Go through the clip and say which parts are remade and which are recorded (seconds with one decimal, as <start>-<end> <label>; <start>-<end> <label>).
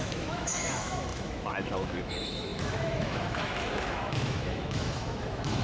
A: 0.0-5.6 remade